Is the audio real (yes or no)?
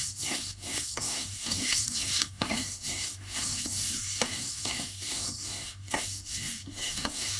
no